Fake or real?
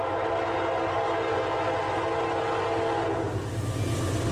real